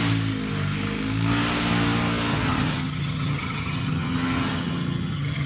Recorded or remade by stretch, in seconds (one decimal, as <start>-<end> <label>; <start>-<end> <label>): 0.0-2.3 recorded; 2.3-5.5 remade